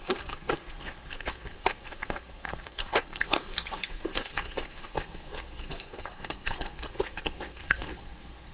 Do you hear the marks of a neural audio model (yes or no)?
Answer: yes